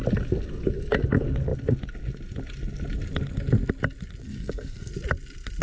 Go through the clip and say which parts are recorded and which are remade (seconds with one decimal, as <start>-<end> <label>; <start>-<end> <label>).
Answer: 0.0-4.2 recorded; 4.2-4.9 remade; 4.9-5.6 recorded